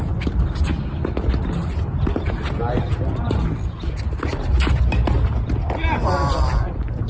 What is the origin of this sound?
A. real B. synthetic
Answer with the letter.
A